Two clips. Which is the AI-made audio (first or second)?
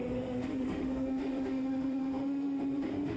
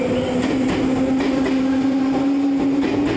first